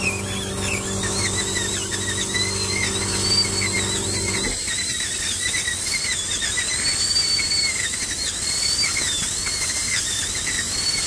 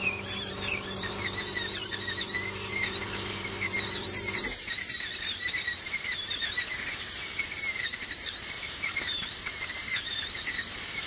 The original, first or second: first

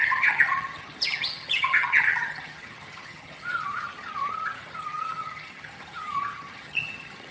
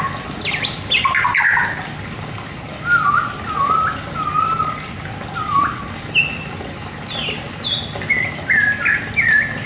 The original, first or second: second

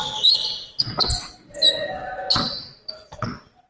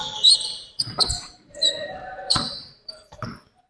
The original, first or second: first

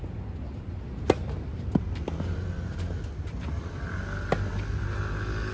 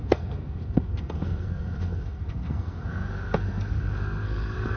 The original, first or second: first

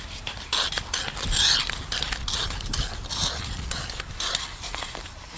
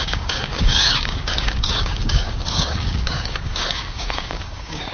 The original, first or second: first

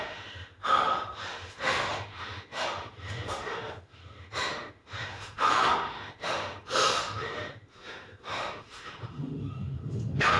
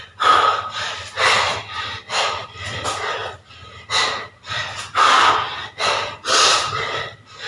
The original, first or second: second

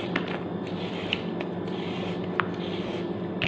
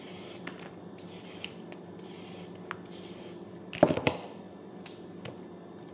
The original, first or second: first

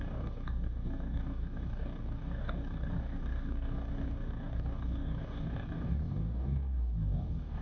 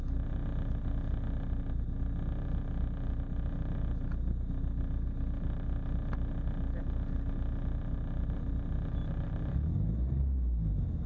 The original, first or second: second